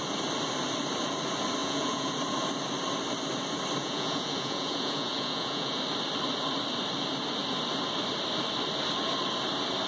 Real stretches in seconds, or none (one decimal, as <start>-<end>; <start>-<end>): 0.0-1.6; 2.1-3.8; 5.8-9.9